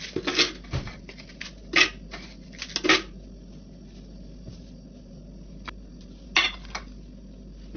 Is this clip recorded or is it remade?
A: recorded